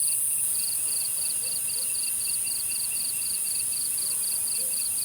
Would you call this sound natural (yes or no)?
yes